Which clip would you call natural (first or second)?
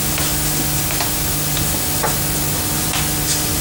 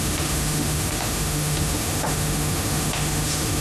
first